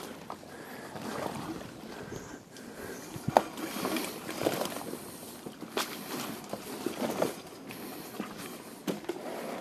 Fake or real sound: fake